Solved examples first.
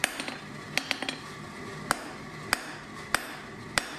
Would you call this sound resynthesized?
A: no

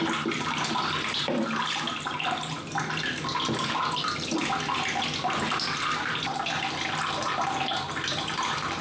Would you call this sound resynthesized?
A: no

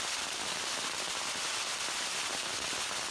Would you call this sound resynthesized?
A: no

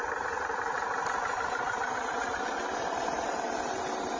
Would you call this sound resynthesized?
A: no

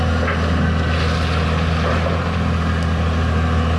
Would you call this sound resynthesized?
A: no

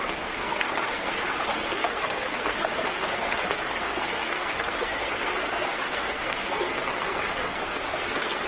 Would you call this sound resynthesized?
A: yes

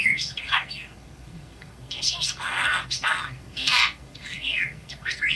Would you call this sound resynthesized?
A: yes